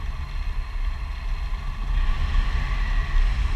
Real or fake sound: real